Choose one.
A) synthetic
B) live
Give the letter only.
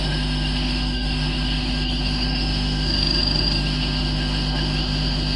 A